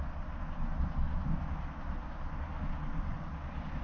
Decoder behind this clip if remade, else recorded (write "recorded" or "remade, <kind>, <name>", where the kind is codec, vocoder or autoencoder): recorded